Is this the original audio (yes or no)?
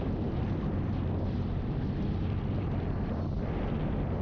no